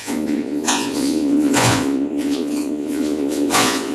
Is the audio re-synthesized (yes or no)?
yes